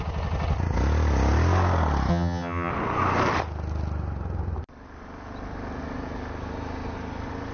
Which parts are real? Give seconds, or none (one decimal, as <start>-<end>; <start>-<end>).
0.0-2.1; 2.7-7.5